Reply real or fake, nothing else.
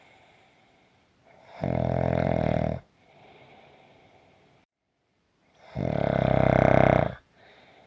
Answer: fake